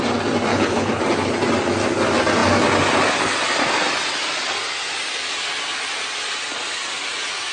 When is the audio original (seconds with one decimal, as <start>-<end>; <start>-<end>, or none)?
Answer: 0.0-0.5; 1.0-7.5